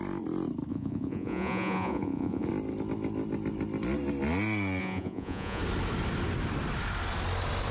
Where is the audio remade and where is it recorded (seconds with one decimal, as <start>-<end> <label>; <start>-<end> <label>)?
0.0-0.7 recorded; 0.7-2.5 remade; 2.5-4.8 recorded; 4.8-5.6 remade; 5.6-7.7 recorded